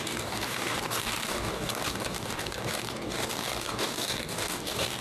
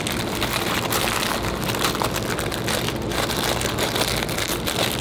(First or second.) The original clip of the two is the second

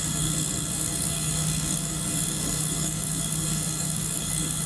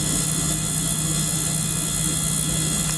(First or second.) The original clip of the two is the second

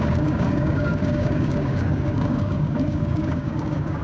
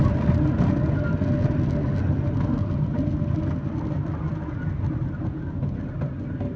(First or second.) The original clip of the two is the second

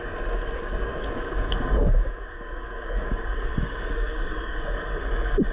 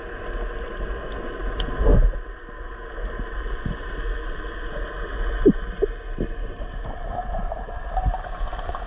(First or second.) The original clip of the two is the second